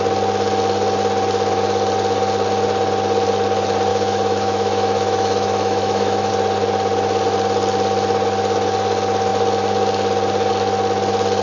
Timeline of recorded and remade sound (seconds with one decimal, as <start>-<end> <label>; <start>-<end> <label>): 0.0-3.9 recorded; 3.9-6.3 remade; 6.3-11.4 recorded